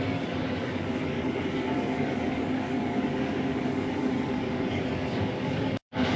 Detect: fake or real fake